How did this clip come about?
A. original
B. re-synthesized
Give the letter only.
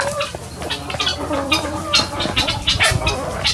A